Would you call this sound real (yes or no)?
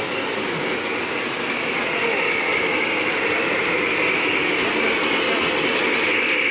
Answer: yes